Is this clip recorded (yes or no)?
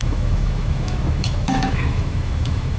no